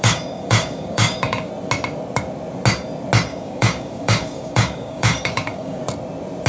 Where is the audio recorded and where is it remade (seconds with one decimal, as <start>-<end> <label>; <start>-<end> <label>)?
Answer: 0.0-1.5 remade; 1.5-3.3 recorded; 3.3-5.8 remade; 5.8-6.5 recorded